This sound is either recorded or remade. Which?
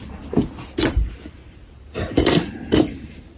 recorded